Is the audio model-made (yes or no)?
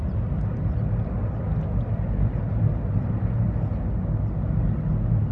no